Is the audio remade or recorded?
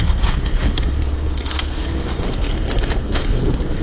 remade